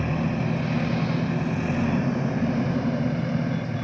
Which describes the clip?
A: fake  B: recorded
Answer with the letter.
B